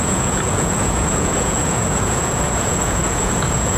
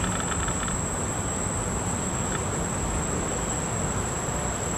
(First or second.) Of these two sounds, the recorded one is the second